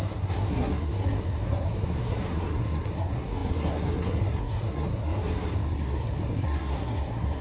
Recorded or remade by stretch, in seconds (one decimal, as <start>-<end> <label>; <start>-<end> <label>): 0.0-7.4 remade